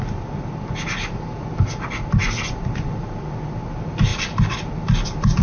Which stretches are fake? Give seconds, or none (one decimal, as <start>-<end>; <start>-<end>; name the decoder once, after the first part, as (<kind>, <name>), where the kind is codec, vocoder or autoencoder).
4.1-4.6 (vocoder, BigVGAN v2)